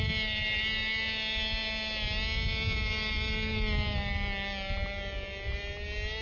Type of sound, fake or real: real